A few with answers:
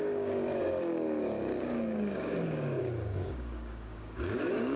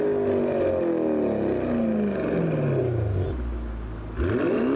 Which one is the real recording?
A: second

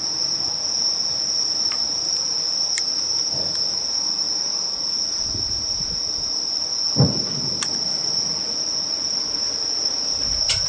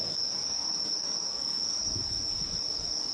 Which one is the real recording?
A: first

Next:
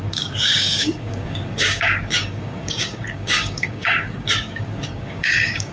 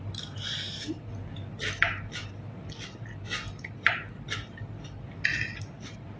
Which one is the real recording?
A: second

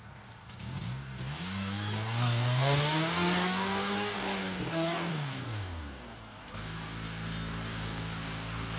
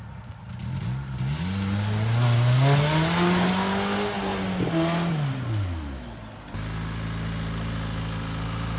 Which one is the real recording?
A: second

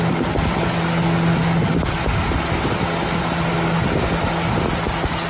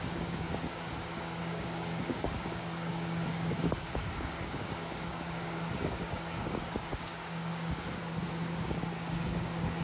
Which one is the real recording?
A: first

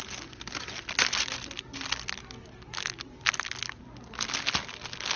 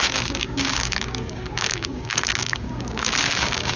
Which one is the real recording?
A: first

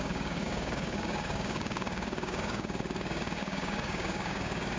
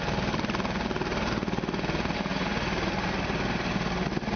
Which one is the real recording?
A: second